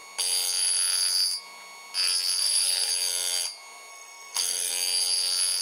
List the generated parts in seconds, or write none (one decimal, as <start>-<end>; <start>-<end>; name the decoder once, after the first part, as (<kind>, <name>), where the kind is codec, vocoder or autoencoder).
2.4-2.9 (codec, SNAC); 3.9-4.7